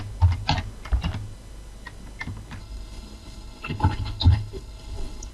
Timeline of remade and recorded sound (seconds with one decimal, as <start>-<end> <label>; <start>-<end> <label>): 0.0-2.6 recorded; 2.6-5.3 remade

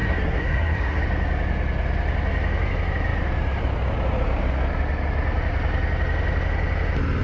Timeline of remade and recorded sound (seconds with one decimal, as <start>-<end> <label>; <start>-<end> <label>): 0.0-1.0 remade; 1.0-7.2 recorded

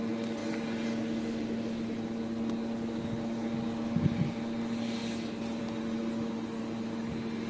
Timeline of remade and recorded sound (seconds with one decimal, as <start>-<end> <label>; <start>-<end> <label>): 0.0-7.5 recorded

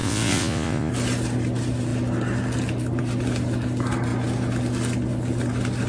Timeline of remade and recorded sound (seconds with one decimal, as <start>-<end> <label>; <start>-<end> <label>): 0.0-0.9 remade; 0.9-5.9 recorded

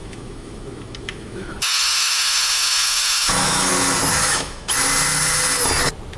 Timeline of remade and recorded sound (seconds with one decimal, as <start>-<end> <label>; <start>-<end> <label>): 0.0-3.7 remade; 3.7-4.2 recorded; 4.2-4.7 remade; 4.7-6.2 recorded

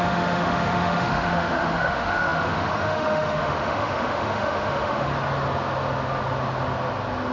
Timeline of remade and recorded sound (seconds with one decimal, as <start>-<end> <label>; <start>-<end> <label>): 0.0-5.1 remade; 5.1-7.3 recorded